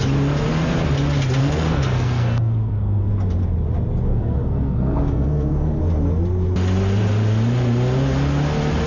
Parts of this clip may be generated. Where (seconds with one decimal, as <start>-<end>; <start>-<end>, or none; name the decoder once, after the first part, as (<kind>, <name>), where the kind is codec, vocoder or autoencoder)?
1.4-3.1 (codec, SNAC); 4.1-5.8